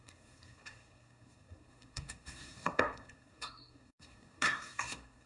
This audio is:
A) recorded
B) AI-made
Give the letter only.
B